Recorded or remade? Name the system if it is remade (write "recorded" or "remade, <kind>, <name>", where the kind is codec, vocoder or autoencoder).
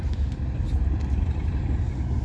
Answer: recorded